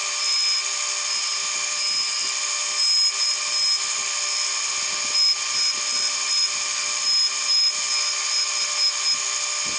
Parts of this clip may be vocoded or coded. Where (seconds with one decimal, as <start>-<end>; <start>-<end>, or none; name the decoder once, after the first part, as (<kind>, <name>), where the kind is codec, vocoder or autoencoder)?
none